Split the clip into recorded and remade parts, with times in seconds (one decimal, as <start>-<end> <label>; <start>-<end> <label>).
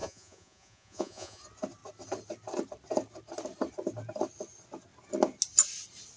0.0-1.4 remade; 1.4-6.2 recorded